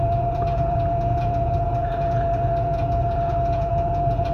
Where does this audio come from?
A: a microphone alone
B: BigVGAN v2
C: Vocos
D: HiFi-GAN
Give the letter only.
C